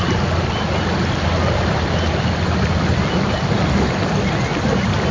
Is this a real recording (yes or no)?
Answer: yes